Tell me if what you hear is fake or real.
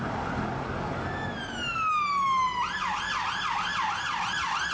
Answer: real